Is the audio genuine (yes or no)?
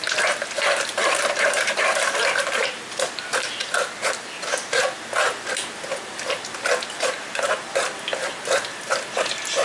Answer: yes